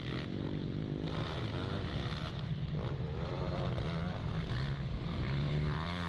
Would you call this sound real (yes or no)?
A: yes